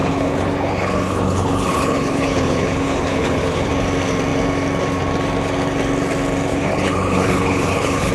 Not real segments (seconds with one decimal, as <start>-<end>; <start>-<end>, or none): 0.0-3.7; 6.5-8.1